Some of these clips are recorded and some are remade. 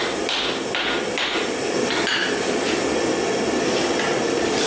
recorded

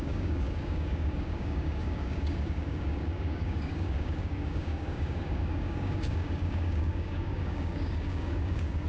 remade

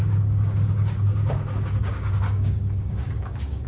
remade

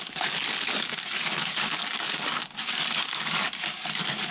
remade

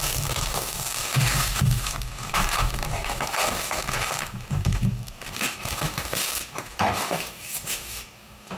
remade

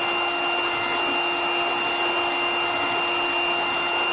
recorded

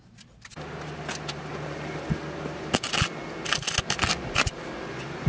recorded